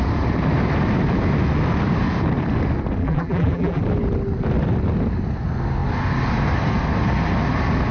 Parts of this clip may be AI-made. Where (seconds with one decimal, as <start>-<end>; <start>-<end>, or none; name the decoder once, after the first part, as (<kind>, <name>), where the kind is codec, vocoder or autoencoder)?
3.0-3.8 (vocoder, BigVGAN v2)